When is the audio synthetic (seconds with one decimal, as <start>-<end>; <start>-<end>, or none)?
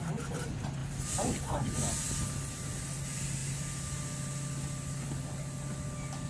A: 0.8-1.6